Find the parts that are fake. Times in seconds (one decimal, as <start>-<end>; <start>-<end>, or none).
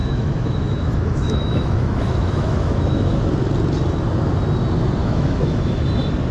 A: 0.0-3.2; 5.0-5.8